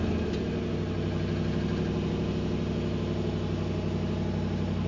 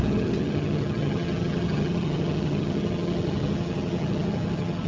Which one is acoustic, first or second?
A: first